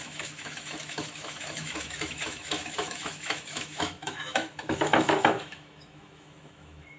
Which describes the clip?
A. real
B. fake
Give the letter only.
B